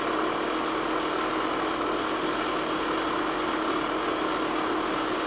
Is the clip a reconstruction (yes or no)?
no